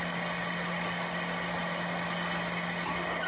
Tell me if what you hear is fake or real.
real